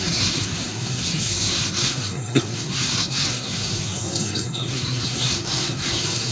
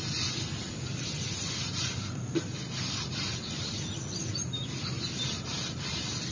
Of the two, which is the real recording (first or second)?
second